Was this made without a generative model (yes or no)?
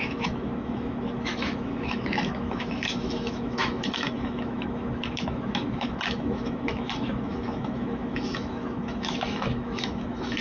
no